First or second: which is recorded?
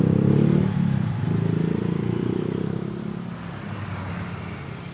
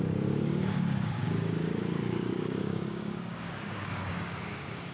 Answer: first